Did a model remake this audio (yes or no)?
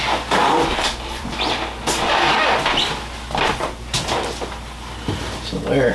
yes